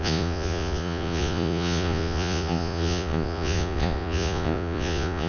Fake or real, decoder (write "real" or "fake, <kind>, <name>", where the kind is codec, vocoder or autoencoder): fake, vocoder, Vocos